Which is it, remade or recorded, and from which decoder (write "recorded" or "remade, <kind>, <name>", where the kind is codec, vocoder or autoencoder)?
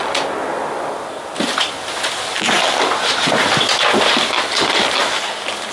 recorded